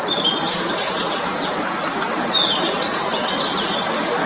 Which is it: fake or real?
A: real